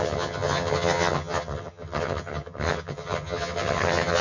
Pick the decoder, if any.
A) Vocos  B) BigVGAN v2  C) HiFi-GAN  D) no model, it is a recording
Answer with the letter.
C